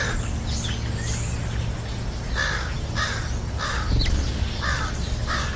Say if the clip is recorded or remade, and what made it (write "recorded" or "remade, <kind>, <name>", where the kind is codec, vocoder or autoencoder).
recorded